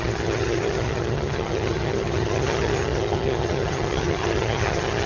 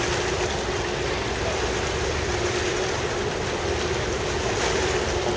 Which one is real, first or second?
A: second